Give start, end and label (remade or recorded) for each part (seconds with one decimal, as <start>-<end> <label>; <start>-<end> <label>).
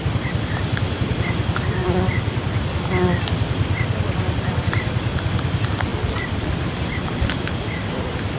0.0-8.4 remade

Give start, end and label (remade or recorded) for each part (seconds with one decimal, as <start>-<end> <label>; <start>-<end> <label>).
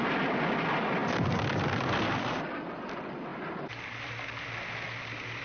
0.0-5.4 recorded